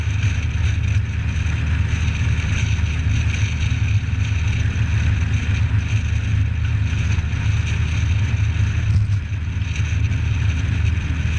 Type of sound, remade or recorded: recorded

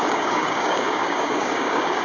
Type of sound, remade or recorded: remade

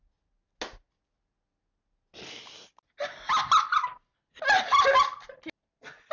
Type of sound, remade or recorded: recorded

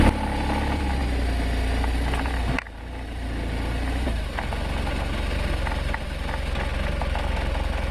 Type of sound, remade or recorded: recorded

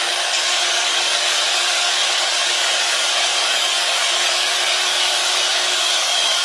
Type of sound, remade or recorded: remade